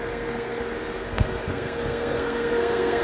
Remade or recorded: remade